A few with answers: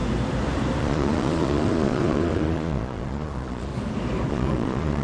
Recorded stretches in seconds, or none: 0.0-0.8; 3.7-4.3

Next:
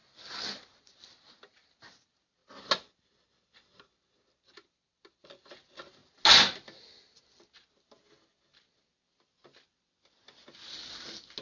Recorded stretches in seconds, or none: 0.0-11.4

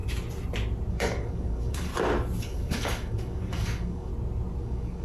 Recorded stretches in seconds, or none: 0.0-0.9; 1.9-2.4; 4.1-4.6

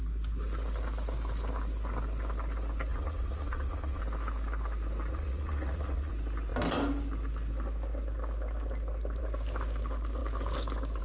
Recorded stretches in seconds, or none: 0.0-2.9; 4.0-5.1; 6.1-11.0

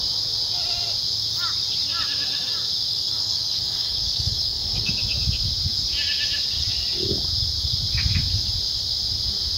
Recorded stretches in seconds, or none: 0.0-2.9; 4.9-9.6

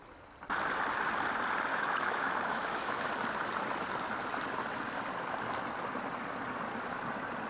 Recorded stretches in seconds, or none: 0.0-1.7; 3.1-7.5